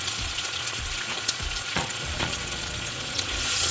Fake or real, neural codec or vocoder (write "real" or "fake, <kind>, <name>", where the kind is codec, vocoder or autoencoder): fake, vocoder, Vocos